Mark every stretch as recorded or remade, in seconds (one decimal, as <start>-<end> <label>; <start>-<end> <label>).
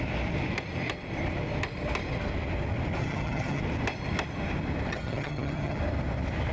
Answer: 0.0-3.0 recorded; 3.0-3.6 remade; 3.6-4.9 recorded; 4.9-5.8 remade; 5.8-6.5 recorded